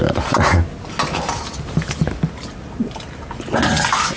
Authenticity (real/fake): real